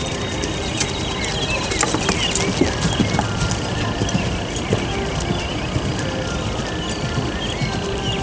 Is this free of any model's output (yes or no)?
yes